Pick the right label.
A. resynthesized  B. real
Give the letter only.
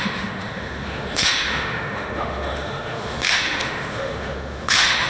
A